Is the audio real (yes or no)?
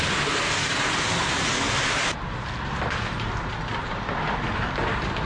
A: yes